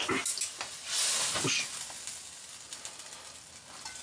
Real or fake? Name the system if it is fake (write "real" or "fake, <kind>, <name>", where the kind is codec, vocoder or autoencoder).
real